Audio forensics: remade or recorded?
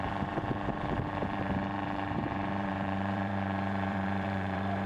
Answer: remade